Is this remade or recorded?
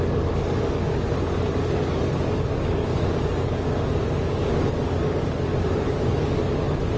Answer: remade